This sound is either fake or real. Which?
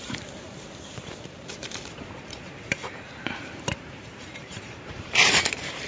fake